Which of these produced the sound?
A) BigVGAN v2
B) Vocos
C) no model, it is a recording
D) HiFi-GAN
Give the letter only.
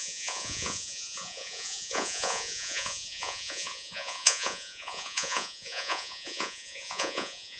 B